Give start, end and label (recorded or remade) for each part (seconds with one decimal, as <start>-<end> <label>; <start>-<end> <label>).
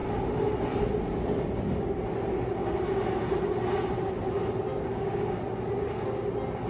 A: 0.0-4.9 recorded; 4.9-5.4 remade; 5.4-6.7 recorded